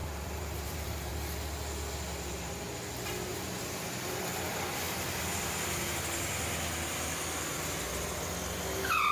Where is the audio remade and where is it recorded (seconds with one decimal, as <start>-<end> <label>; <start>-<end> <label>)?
0.0-1.1 remade; 1.1-3.3 recorded; 3.3-3.8 remade; 3.8-9.1 recorded